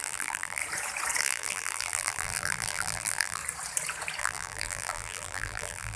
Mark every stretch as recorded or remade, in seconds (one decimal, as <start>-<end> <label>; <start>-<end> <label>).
0.0-0.6 remade; 0.6-1.2 recorded; 1.2-3.4 remade; 3.4-4.2 recorded; 4.2-6.0 remade